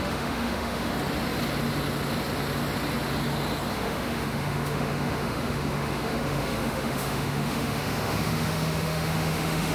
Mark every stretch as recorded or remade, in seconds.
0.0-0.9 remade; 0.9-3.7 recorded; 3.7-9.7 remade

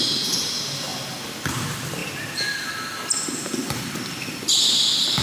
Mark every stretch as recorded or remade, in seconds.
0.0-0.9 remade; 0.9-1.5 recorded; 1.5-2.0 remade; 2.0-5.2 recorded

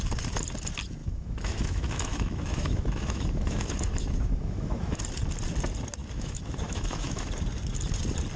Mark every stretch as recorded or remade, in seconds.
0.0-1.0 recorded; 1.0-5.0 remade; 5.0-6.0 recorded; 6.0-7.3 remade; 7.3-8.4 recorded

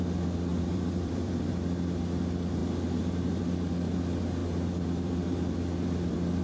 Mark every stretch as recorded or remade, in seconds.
0.0-0.5 recorded; 0.5-1.5 remade; 1.5-4.4 recorded; 4.4-6.4 remade

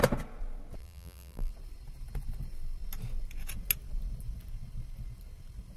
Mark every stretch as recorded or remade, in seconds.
0.0-0.8 recorded; 0.8-1.5 remade; 1.5-5.8 recorded

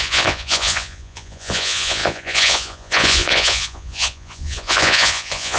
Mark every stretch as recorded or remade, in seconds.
0.0-5.6 remade